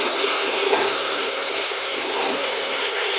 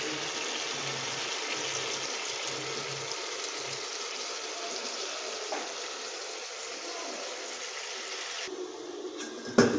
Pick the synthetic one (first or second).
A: first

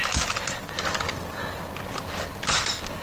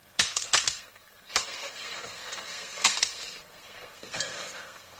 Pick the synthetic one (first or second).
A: second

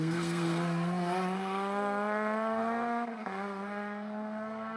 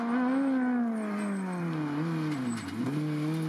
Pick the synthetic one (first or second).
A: first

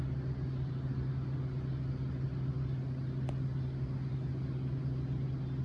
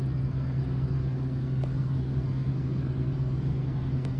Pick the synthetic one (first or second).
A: second